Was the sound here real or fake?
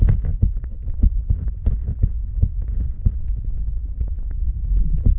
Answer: real